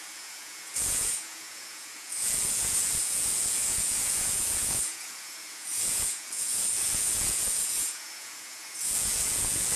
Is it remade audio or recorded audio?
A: remade